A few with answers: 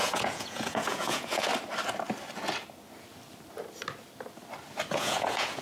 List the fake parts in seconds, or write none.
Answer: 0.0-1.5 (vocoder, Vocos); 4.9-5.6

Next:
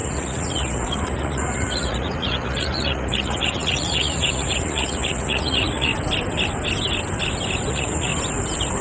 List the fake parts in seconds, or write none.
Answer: 0.0-5.9 (vocoder, Vocos); 7.7-8.1

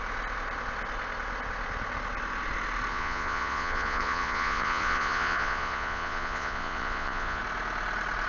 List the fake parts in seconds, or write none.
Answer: 2.9-7.4 (vocoder, Vocos)

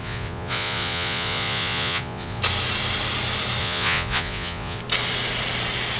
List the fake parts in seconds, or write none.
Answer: 0.0-2.4 (vocoder, Vocos); 3.6-4.8

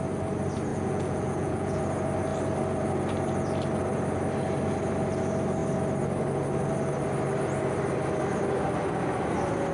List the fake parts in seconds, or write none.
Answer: 0.7-1.8 (vocoder, Vocos)